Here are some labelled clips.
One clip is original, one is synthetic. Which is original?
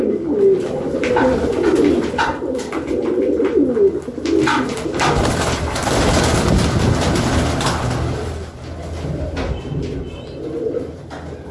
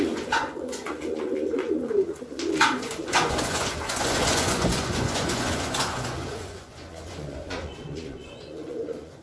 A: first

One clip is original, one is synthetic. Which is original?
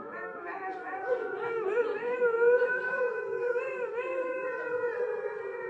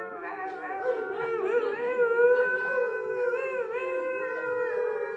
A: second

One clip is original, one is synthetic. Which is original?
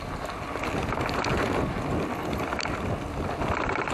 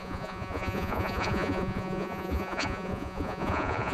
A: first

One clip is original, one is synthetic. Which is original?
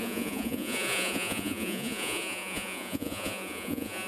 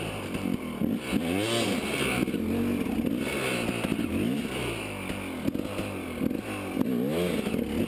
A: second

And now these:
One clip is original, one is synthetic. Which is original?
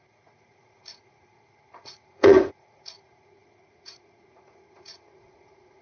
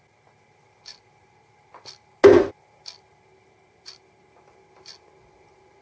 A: second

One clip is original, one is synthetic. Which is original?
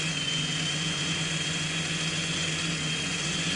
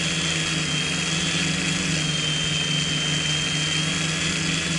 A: second